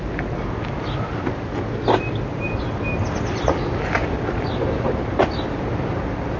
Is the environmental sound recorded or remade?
recorded